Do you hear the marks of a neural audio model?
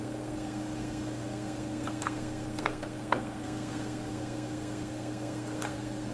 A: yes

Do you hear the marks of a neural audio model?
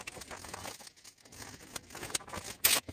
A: no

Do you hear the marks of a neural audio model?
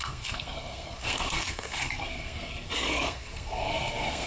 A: yes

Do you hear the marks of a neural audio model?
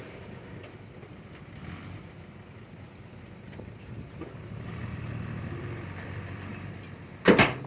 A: no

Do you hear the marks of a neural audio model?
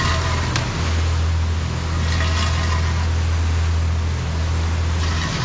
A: no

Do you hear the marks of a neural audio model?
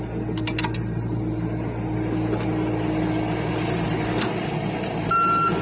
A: no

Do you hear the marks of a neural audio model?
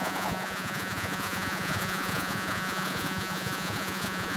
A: yes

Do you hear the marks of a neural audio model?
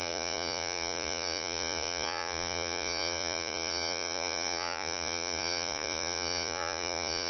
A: yes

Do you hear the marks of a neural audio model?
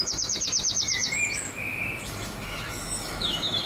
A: yes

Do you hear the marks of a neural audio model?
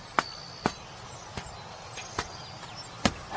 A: no